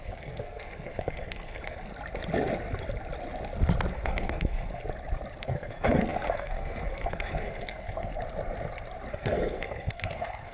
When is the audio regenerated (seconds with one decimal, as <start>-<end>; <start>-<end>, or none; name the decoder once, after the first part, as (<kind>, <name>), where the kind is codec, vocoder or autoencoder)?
0.0-1.9 (codec, SNAC); 3.9-4.8; 5.4-8.1; 9.1-10.5